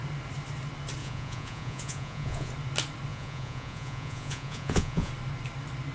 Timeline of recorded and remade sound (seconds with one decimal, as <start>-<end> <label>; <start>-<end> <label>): 0.0-1.0 recorded; 1.0-2.5 remade; 2.5-3.1 recorded; 3.1-5.1 remade; 5.1-5.9 recorded